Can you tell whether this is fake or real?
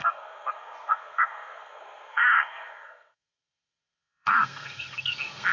fake